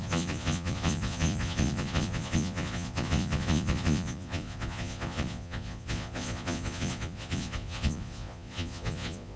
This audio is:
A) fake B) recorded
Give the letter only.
A